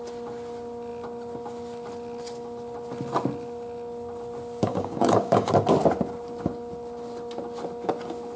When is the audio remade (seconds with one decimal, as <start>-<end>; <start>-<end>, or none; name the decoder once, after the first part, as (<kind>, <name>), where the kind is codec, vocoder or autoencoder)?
4.7-5.5 (codec, DAC)